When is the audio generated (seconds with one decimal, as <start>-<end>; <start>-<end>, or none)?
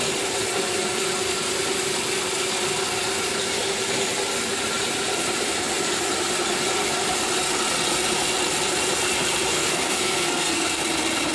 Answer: 9.5-10.8